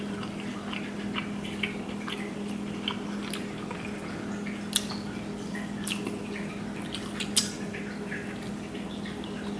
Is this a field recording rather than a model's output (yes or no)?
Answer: yes